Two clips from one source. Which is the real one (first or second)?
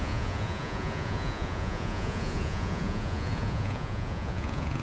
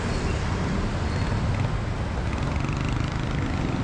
second